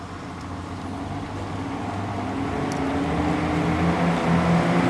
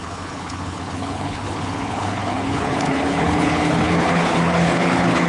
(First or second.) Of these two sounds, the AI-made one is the second